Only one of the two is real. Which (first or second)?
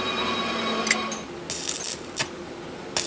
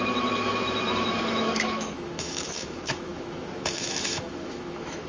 first